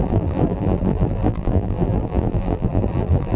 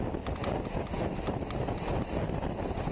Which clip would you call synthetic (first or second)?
first